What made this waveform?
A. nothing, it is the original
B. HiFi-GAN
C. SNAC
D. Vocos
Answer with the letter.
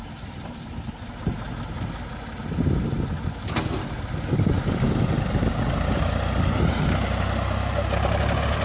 A